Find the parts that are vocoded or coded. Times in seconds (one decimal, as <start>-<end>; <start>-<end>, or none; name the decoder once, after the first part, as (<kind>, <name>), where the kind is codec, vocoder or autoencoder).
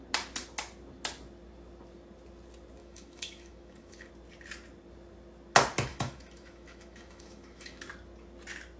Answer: 2.8-4.1 (autoencoder, DAC-VAE); 5.9-7.8